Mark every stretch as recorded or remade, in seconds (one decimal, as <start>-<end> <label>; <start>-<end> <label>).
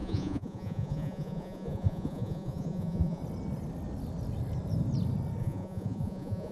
0.0-3.2 remade; 3.2-5.4 recorded; 5.4-6.5 remade